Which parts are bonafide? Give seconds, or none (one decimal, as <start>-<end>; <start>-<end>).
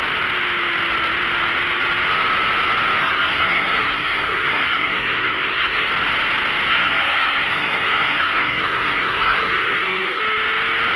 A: 0.0-3.0; 5.9-6.7; 10.2-11.0